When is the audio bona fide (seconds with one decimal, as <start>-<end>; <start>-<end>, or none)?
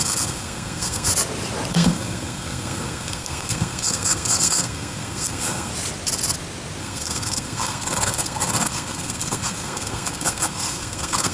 1.1-1.7; 5.7-6.8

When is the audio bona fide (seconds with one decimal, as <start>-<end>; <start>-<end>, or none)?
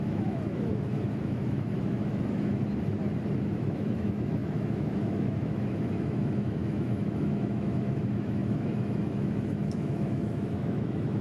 2.6-3.5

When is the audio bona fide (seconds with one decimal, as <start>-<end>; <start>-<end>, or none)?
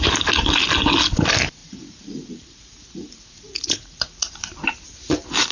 0.0-1.6; 4.3-5.5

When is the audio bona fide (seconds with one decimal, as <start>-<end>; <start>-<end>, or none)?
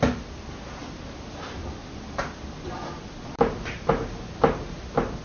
0.0-0.8; 3.9-5.2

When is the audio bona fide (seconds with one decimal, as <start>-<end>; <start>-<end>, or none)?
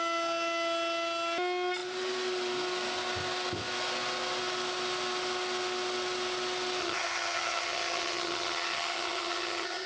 0.0-6.8